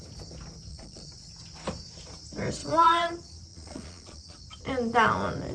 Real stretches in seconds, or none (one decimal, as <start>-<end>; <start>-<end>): 0.0-0.7; 1.3-2.6; 3.1-3.5; 4.4-5.5